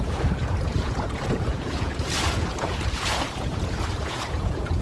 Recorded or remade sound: remade